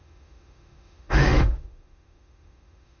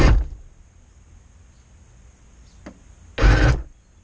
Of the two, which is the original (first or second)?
second